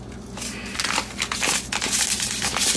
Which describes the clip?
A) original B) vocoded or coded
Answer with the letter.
A